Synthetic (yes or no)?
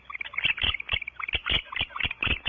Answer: no